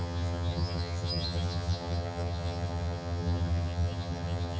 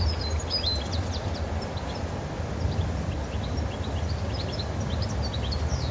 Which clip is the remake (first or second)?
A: first